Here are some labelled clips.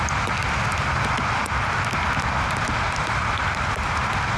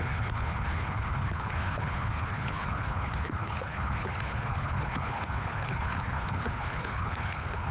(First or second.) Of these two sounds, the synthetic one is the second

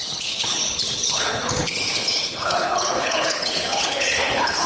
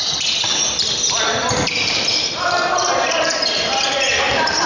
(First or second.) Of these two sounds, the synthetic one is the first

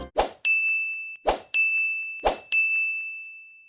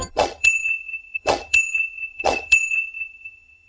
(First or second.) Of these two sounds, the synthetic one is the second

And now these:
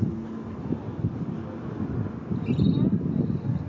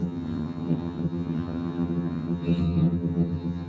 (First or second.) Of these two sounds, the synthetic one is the second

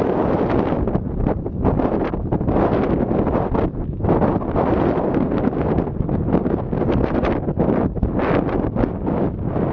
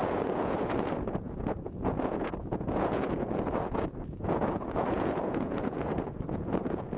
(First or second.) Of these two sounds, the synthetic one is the second